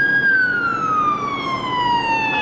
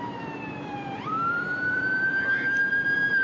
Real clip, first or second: first